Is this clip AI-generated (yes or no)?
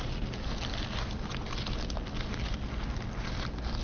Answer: no